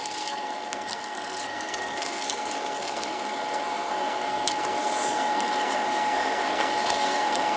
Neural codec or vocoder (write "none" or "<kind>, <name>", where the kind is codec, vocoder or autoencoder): codec, SNAC